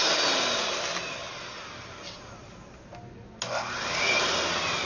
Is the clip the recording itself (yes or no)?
yes